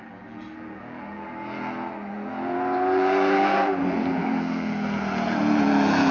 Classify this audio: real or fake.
fake